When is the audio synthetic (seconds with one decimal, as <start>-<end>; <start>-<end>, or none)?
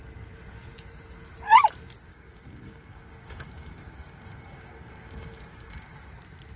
2.1-6.1